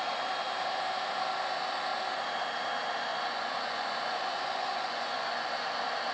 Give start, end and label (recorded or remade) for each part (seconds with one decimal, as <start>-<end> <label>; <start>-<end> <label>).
0.0-3.1 recorded; 3.1-5.5 remade; 5.5-6.1 recorded